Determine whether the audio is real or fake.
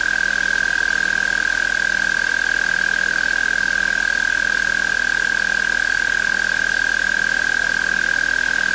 real